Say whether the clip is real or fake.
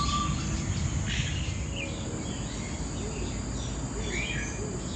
real